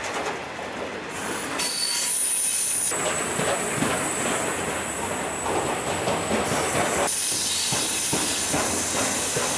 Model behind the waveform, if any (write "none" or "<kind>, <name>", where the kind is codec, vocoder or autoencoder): none